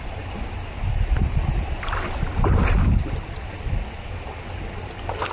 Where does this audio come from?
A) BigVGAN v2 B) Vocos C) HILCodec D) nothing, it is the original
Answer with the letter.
D